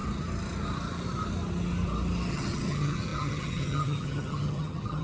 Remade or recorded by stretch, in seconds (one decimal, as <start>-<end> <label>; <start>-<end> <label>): 0.0-2.3 recorded; 2.3-5.0 remade